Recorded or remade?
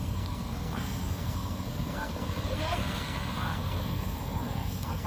remade